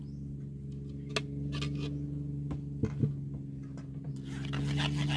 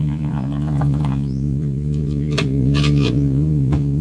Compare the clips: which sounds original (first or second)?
first